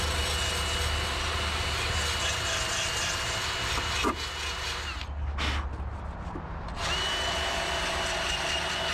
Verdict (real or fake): real